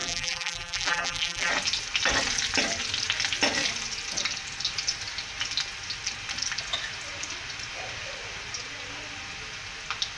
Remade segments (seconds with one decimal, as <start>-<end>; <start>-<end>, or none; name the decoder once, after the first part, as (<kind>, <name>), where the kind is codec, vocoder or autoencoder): 0.0-1.5 (vocoder, BigVGAN v2)